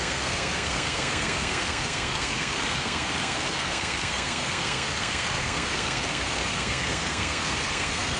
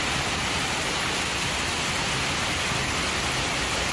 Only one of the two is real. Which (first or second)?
second